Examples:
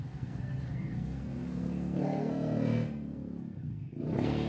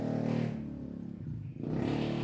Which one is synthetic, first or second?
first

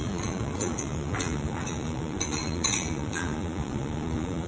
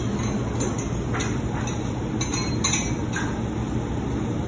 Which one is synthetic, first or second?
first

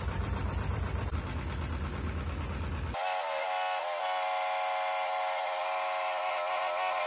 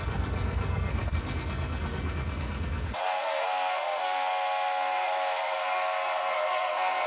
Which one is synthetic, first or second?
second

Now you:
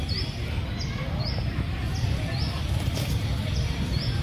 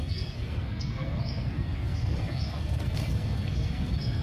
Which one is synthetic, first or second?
second